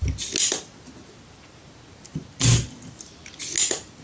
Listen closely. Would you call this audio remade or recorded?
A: recorded